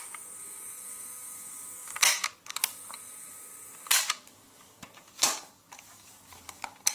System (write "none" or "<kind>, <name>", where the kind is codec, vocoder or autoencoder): codec, DAC